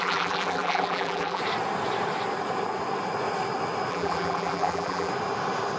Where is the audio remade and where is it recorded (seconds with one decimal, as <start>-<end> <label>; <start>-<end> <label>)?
0.0-1.4 remade; 1.4-3.9 recorded; 3.9-5.1 remade; 5.1-5.8 recorded